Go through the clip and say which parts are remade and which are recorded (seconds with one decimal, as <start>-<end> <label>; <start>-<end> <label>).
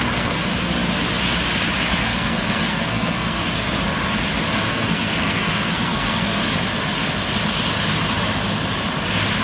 0.0-0.5 remade; 0.5-2.0 recorded; 2.0-3.4 remade; 3.4-4.7 recorded; 4.7-6.4 remade; 6.4-9.4 recorded